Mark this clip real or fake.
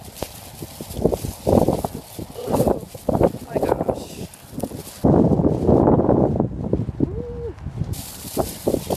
real